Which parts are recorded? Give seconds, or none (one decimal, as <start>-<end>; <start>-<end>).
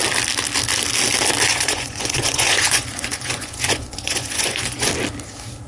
0.0-1.5; 4.9-5.7